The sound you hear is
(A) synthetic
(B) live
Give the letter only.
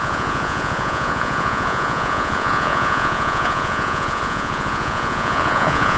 A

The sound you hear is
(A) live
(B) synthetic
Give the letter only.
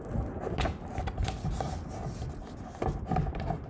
A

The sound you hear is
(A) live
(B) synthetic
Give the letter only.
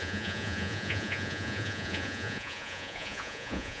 B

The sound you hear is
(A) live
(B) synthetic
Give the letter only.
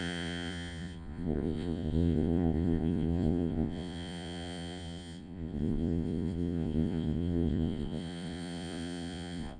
B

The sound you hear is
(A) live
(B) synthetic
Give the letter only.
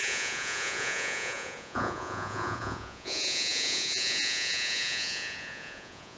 B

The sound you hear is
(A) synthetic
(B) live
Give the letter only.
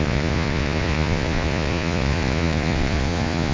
A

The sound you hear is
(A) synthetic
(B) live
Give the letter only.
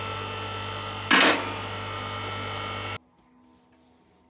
B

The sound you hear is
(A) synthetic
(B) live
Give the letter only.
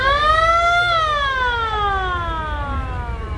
B